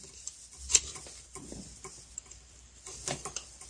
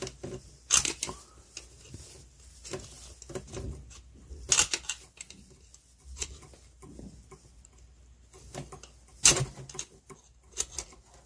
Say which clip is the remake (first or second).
first